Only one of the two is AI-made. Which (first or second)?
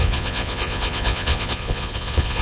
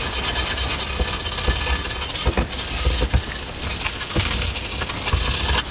first